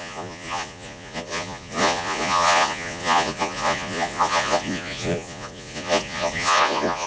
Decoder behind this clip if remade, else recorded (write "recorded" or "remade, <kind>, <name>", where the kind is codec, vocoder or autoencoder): remade, vocoder, Vocos